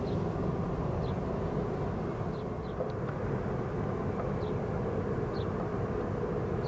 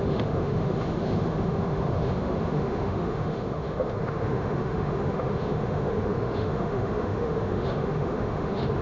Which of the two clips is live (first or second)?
first